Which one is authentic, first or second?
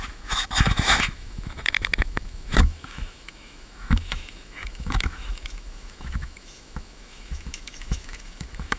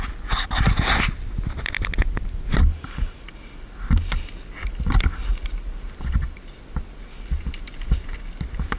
second